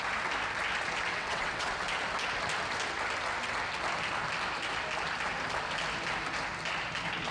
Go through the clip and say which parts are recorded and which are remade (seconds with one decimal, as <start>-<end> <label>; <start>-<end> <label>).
0.0-1.1 recorded; 1.1-1.7 remade; 1.7-7.3 recorded